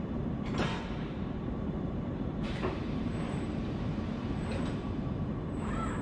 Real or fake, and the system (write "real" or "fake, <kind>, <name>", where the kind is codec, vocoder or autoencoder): fake, vocoder, BigVGAN v2